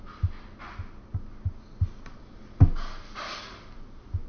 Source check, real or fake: real